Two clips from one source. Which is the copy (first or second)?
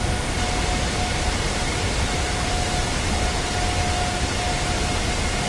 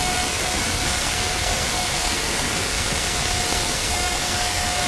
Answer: second